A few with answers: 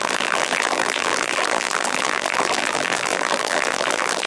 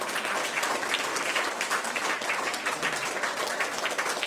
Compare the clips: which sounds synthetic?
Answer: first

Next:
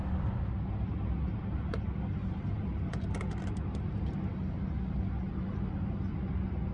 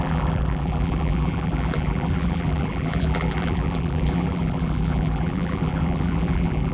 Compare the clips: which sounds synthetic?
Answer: second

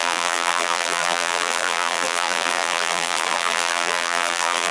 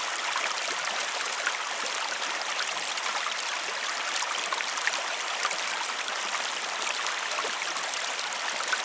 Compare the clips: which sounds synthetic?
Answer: first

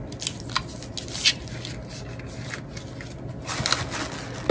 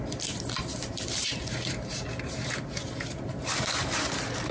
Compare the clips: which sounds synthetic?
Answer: second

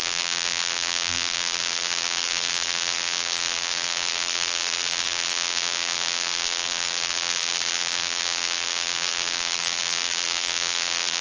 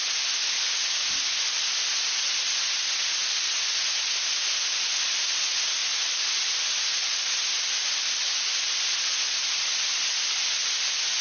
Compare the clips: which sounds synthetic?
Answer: first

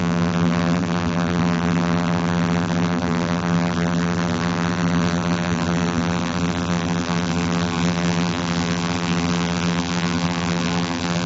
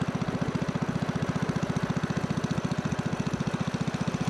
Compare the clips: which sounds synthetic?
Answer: first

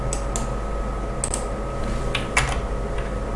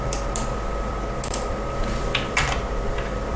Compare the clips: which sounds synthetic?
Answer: second